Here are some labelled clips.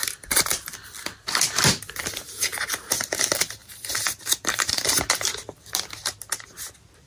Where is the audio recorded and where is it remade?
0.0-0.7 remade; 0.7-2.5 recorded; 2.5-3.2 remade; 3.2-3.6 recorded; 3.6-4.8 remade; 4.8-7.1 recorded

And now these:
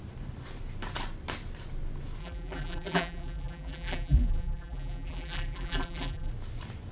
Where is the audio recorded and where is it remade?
0.0-2.2 recorded; 2.2-6.3 remade; 6.3-6.9 recorded

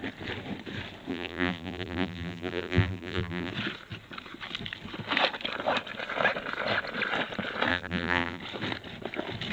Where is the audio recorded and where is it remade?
0.0-1.1 recorded; 1.1-3.5 remade; 3.5-7.7 recorded; 7.7-8.4 remade; 8.4-9.5 recorded

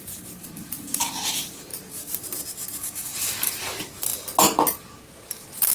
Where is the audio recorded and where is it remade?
0.0-4.1 remade; 4.1-5.7 recorded

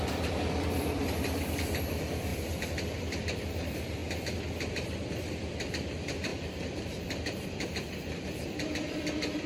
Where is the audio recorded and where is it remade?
0.0-4.0 remade; 4.0-5.7 recorded; 5.7-9.5 remade

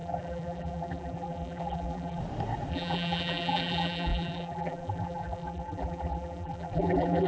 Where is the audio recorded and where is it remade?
0.0-2.2 remade; 2.2-2.7 recorded; 2.7-7.3 remade

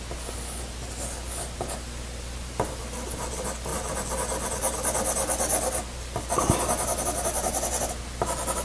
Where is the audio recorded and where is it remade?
0.0-8.6 recorded